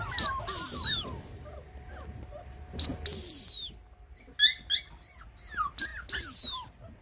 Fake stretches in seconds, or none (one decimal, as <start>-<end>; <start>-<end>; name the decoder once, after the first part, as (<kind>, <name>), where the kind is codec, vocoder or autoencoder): none